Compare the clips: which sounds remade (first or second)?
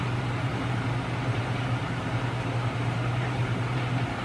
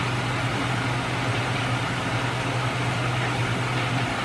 first